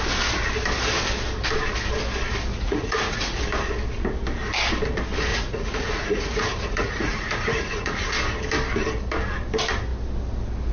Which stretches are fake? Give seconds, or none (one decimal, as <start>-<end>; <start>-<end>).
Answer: 2.5-3.4; 5.3-8.1

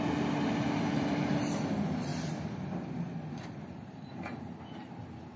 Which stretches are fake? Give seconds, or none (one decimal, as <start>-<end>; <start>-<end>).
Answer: none

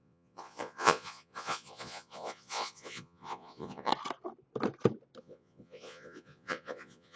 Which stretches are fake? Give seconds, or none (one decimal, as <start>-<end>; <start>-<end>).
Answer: 0.0-3.9; 5.2-7.2

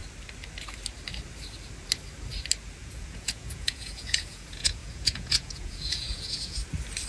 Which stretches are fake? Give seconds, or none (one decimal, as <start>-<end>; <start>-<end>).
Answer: 2.8-6.6

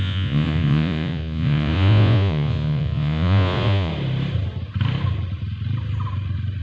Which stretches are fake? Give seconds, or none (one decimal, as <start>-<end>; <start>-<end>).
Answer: 0.0-3.9

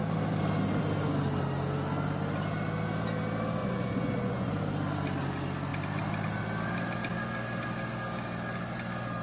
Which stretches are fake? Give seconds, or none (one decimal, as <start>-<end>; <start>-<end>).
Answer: 3.6-4.5